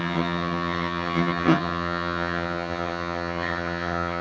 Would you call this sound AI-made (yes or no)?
yes